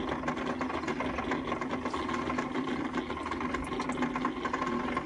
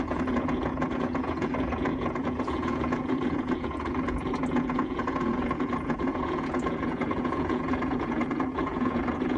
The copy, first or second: second